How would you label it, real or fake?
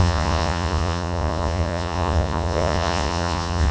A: fake